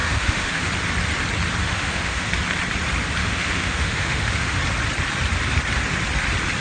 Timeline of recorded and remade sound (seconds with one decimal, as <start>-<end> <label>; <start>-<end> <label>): 0.0-0.7 remade; 0.7-1.6 recorded; 1.6-2.3 remade; 2.3-3.2 recorded; 3.2-4.6 remade; 4.6-6.6 recorded